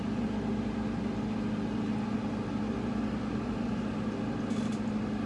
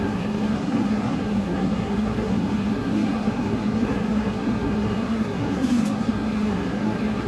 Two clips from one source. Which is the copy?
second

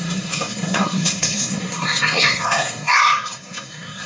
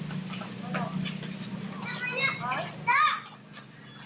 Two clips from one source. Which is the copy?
first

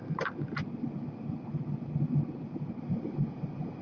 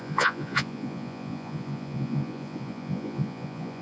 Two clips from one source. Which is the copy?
second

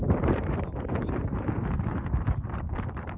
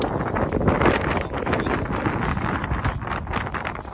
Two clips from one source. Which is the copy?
first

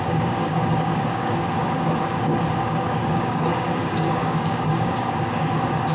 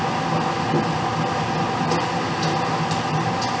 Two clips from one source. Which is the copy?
first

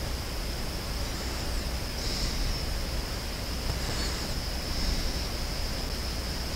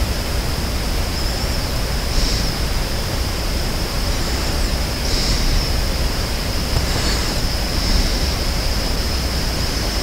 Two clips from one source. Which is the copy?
second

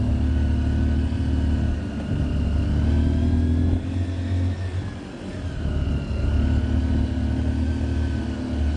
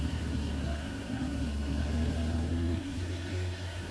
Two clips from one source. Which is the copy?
second